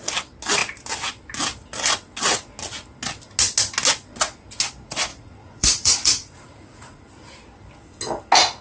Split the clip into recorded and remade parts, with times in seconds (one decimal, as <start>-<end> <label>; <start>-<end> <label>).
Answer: 0.0-5.1 recorded; 5.1-7.0 remade; 7.0-8.6 recorded